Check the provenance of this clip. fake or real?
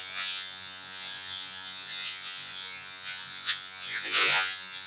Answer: fake